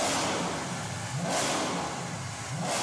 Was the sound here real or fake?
real